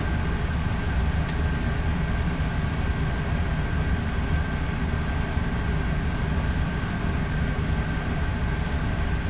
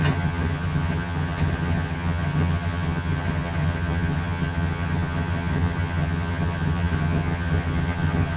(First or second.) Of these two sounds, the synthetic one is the second